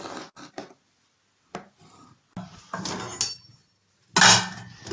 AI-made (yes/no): no